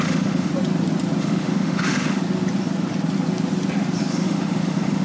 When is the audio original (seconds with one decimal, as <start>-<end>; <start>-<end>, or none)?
0.5-1.2; 2.2-4.1